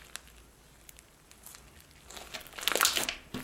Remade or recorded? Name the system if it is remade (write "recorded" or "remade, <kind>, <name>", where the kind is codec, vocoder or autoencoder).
recorded